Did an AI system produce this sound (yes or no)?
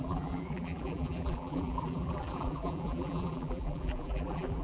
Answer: yes